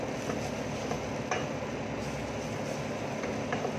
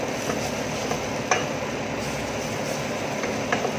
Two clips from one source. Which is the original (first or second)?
first